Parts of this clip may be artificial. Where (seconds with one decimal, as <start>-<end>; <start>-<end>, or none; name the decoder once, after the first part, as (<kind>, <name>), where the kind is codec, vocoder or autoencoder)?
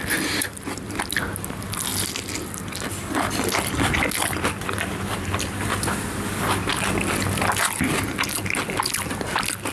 none